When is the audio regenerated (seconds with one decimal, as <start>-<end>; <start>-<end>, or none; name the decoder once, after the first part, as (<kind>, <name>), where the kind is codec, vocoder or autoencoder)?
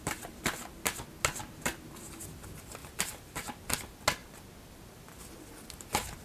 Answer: 2.8-3.6 (vocoder, BigVGAN v2)